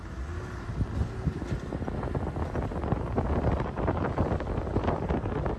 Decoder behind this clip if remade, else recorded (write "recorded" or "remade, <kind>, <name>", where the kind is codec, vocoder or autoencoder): recorded